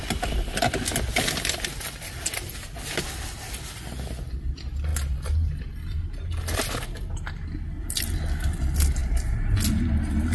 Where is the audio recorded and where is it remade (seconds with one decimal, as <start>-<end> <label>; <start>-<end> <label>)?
0.0-10.3 recorded